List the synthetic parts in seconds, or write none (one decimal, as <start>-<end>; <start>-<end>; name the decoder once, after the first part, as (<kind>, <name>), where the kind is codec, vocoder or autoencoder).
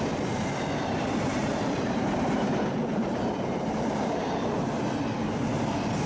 1.4-4.7 (vocoder, BigVGAN v2)